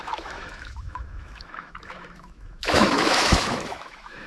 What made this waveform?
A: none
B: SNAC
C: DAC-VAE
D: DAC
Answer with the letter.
C